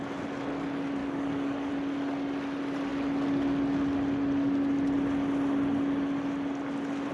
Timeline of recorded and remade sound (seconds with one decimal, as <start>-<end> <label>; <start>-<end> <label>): 0.0-1.0 recorded; 1.0-1.7 remade; 1.7-7.1 recorded